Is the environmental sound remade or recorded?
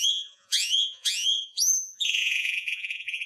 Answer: remade